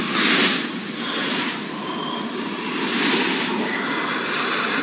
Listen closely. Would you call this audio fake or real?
real